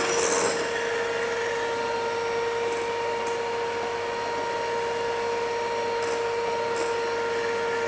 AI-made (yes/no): no